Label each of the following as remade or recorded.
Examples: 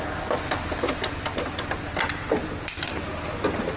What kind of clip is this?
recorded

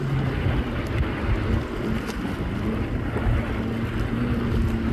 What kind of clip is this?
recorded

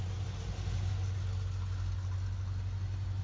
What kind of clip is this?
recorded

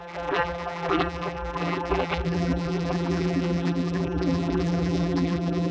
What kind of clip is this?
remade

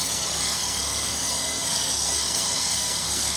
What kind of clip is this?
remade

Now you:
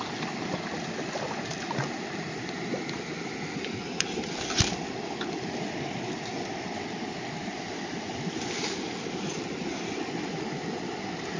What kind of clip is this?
recorded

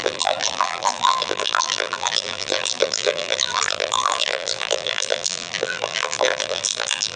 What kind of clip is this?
remade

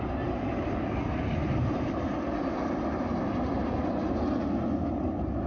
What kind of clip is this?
recorded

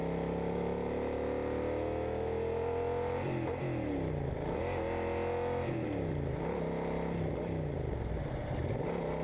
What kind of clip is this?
recorded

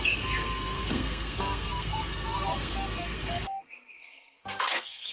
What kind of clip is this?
remade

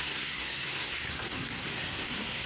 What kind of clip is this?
remade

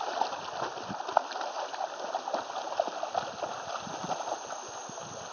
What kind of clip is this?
recorded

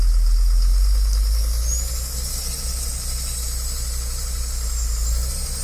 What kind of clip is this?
recorded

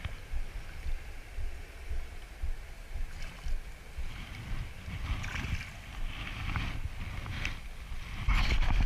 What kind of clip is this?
recorded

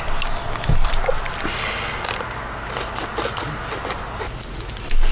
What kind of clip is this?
recorded